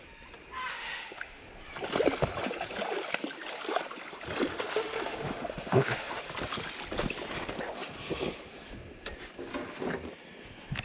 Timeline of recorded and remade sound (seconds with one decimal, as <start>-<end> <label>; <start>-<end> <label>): 0.0-0.7 recorded; 0.7-1.4 remade; 1.4-4.5 recorded; 4.5-6.2 remade; 6.2-10.8 recorded